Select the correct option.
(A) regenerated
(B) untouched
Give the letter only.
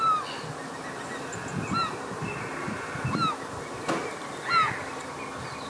B